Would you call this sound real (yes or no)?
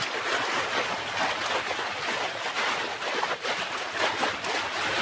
yes